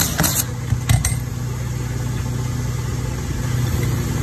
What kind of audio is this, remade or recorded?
recorded